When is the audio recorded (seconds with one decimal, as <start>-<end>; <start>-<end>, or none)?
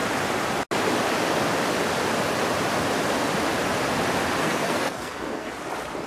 0.0-4.4; 5.5-6.1